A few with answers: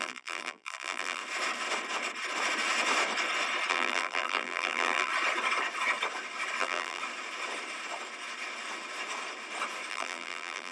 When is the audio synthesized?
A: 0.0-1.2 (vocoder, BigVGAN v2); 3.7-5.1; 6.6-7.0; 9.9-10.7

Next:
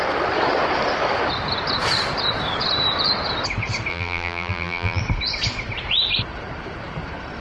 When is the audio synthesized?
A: 3.9-5.0 (vocoder, BigVGAN v2)

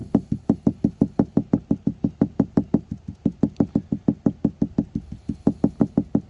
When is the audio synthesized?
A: 0.0-3.7 (vocoder, BigVGAN v2)

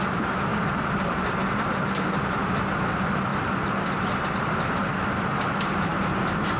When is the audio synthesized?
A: 0.0-3.3 (vocoder, BigVGAN v2); 3.9-4.8; 5.9-6.6

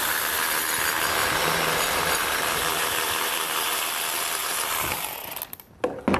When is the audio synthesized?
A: 1.2-3.9 (vocoder, BigVGAN v2); 4.4-5.4

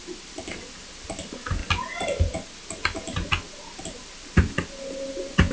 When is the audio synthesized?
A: 0.0-1.6 (vocoder, BigVGAN v2); 3.8-5.5

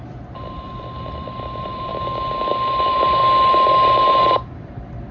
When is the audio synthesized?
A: 0.0-1.9 (vocoder, BigVGAN v2); 2.7-3.2; 4.1-5.1